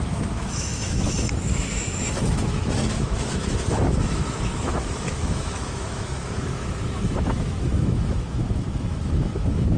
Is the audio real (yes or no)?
no